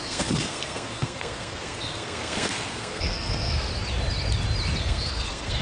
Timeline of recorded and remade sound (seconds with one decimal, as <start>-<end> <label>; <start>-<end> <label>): 0.0-3.7 remade; 3.7-4.8 recorded; 4.8-5.6 remade